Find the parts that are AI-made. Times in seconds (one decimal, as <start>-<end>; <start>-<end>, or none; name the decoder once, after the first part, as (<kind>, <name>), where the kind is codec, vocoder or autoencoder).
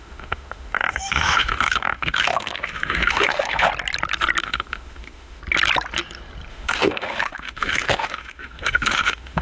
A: 0.0-3.7 (autoencoder, DAC-VAE); 4.4-5.4; 6.5-9.4